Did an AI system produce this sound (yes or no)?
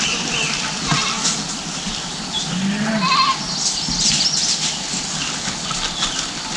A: no